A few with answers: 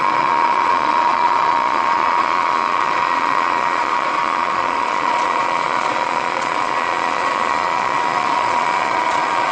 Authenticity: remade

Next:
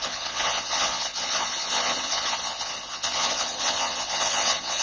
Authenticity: remade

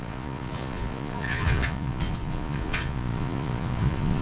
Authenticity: remade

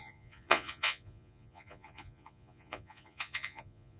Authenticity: remade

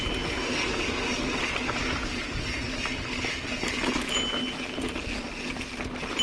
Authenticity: recorded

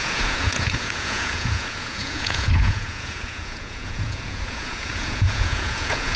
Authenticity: remade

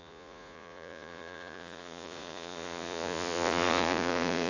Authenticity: remade